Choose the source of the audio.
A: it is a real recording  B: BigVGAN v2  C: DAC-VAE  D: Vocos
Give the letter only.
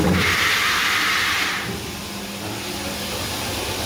A